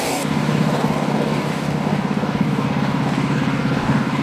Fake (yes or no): yes